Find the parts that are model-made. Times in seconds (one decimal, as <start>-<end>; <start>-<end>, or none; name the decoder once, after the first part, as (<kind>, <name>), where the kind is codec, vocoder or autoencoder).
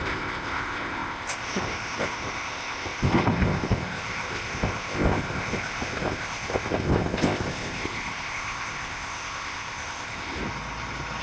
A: 0.0-10.4 (codec, ZipCodec)